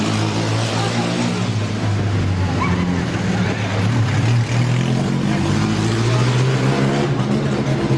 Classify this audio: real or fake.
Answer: real